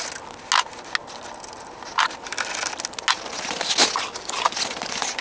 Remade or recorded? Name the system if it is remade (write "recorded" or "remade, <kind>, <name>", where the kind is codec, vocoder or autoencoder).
recorded